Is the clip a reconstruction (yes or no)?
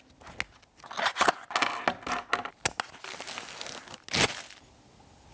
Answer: no